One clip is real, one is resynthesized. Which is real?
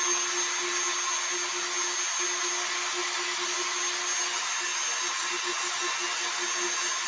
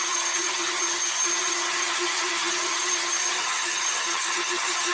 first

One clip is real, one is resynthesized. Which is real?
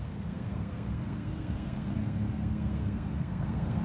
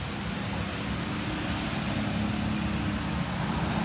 second